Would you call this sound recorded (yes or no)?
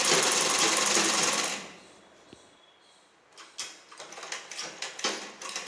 yes